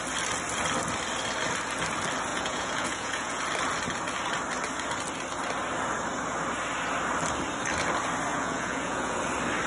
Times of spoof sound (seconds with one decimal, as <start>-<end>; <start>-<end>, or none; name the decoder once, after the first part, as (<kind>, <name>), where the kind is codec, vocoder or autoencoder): 2.3-3.4 (vocoder, Vocos); 8.3-9.2